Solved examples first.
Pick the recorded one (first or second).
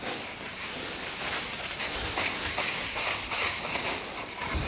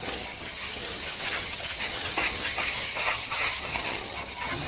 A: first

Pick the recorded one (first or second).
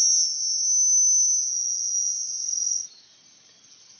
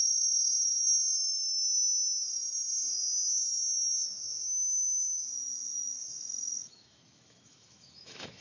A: first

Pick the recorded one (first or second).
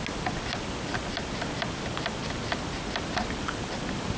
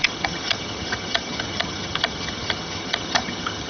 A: first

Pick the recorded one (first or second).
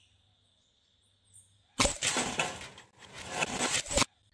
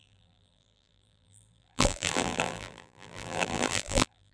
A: first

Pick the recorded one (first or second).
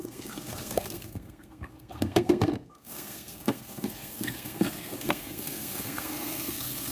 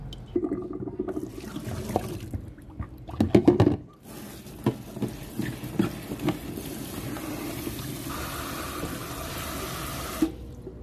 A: second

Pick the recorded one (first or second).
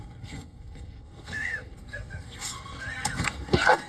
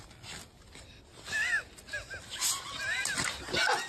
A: second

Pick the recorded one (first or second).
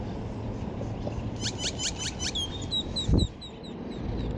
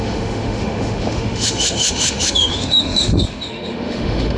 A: first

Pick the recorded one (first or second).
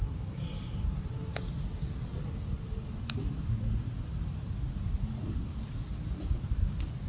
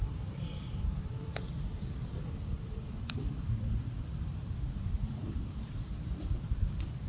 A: first